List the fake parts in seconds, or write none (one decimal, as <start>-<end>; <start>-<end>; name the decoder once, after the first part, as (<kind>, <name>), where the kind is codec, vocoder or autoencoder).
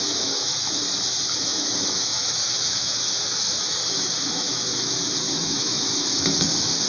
0.0-0.8 (autoencoder, DAC-VAE); 1.4-6.9